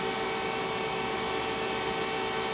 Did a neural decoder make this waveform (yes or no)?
no